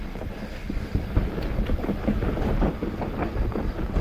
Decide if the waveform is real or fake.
real